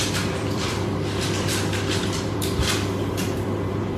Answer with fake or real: fake